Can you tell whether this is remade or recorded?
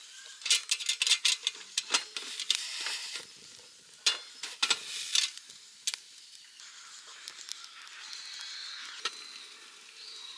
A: recorded